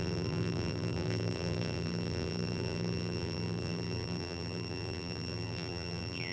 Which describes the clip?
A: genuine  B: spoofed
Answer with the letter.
B